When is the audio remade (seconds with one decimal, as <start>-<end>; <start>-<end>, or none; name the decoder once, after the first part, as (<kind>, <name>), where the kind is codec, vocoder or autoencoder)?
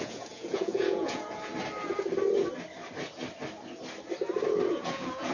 0.0-1.5 (vocoder, Vocos); 4.7-5.3